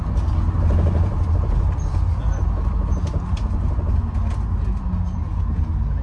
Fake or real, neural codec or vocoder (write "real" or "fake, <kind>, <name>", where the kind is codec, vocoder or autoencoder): real